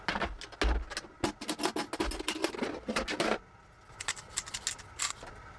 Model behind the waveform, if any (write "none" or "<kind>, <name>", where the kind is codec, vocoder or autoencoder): none